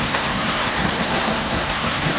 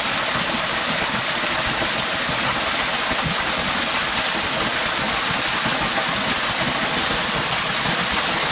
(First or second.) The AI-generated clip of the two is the first